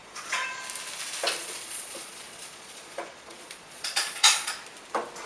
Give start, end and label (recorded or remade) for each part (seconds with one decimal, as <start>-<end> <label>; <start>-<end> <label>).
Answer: 0.0-0.6 remade; 0.6-1.4 recorded; 1.4-4.5 remade; 4.5-5.3 recorded

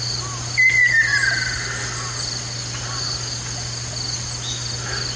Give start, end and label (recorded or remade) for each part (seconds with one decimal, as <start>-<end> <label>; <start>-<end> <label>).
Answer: 0.0-5.2 recorded

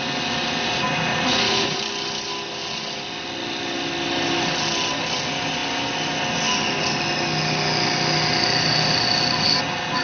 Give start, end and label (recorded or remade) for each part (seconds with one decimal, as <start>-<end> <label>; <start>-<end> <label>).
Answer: 0.0-1.1 recorded; 1.1-1.8 remade; 1.8-10.0 recorded

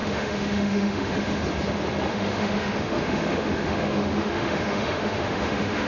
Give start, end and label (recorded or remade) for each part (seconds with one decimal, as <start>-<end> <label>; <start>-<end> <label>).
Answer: 0.0-1.4 remade; 1.4-2.1 recorded; 2.1-5.9 remade

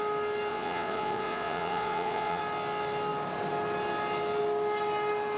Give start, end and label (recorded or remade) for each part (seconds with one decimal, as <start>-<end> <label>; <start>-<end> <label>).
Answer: 0.0-0.5 recorded; 0.5-2.4 remade; 2.4-5.4 recorded

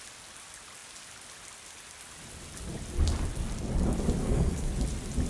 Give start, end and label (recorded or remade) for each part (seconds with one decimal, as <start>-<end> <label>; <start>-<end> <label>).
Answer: 0.0-4.2 recorded; 4.2-4.7 remade; 4.7-5.3 recorded